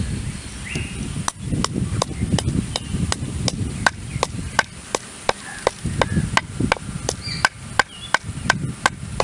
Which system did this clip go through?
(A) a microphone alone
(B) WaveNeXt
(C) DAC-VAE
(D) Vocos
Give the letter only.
A